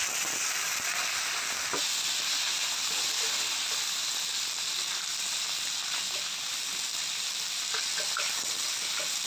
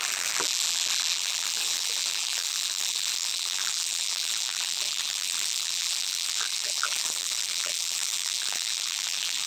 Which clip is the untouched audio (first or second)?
first